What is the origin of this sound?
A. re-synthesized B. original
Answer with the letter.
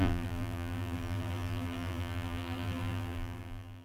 A